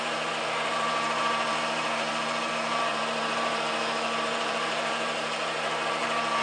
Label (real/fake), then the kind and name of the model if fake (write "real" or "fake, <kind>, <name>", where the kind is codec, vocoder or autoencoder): fake, vocoder, BigVGAN v2